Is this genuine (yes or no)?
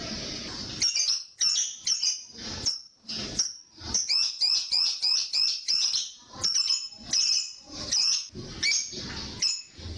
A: yes